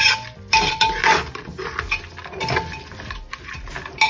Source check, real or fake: real